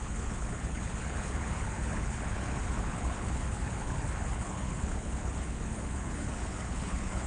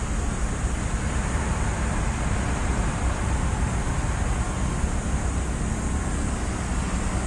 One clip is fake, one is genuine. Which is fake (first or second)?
first